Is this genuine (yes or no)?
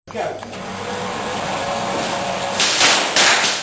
yes